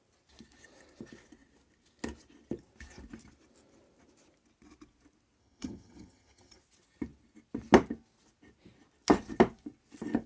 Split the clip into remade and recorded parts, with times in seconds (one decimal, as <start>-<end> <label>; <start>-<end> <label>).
0.0-5.4 recorded; 5.4-6.6 remade; 6.6-10.3 recorded